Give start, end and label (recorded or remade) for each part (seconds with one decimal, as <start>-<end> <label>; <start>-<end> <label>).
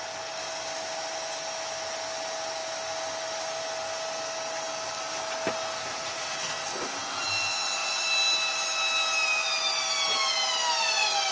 0.0-5.9 recorded; 5.9-6.5 remade; 6.5-11.3 recorded